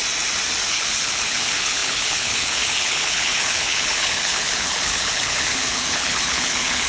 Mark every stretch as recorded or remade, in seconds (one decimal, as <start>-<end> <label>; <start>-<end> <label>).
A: 0.0-0.7 recorded; 0.7-6.9 remade

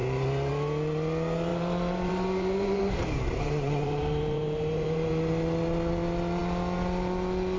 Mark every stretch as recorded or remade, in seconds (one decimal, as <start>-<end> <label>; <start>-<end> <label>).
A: 0.0-1.5 recorded; 1.5-5.1 remade; 5.1-7.6 recorded